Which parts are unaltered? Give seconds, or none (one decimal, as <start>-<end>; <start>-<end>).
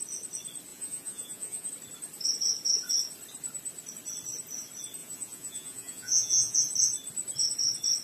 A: 0.0-0.7; 1.7-5.0; 6.6-8.0